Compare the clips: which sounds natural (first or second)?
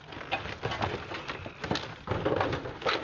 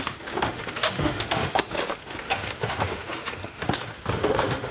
first